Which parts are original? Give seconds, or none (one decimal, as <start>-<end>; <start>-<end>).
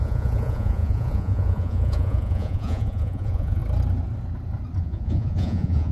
3.6-4.8